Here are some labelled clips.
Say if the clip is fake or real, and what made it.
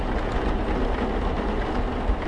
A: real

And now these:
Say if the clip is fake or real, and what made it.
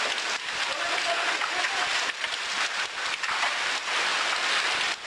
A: real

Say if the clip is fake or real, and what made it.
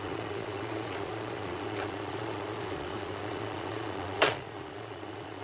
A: fake, vocoder, Vocos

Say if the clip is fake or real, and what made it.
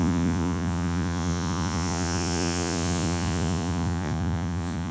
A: fake, vocoder, Vocos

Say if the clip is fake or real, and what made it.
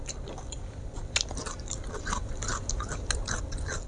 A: real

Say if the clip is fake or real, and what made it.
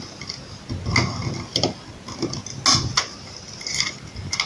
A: real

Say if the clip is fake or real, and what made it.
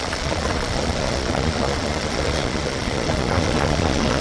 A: fake, vocoder, Vocos